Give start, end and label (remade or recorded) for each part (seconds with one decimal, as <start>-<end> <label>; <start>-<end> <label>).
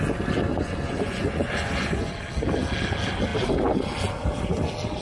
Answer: 0.0-0.5 recorded; 0.5-2.1 remade; 2.1-5.0 recorded